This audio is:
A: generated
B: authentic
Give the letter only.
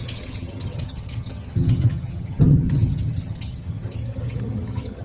A